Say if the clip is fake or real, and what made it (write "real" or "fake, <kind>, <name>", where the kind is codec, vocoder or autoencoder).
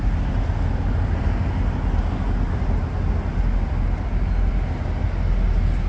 real